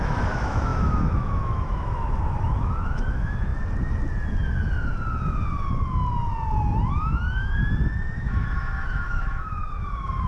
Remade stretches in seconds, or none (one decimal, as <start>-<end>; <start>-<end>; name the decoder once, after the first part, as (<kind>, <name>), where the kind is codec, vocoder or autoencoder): 0.0-3.5 (autoencoder, DAC-VAE); 6.9-7.6; 8.2-10.3